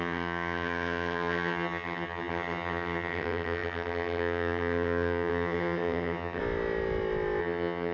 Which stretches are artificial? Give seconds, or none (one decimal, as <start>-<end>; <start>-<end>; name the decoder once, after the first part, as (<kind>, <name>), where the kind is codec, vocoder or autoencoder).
0.0-6.4 (vocoder, HiFi-GAN); 7.4-7.9